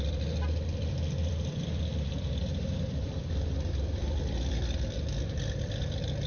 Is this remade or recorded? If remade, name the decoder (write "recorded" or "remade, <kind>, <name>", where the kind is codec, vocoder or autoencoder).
remade, vocoder, BigVGAN v2